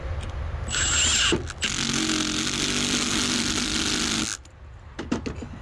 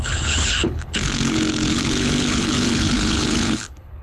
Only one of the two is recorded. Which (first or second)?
first